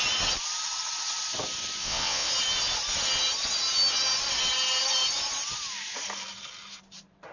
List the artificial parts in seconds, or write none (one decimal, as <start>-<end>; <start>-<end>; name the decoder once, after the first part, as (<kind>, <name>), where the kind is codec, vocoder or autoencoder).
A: 1.8-2.3 (vocoder, WaveNeXt)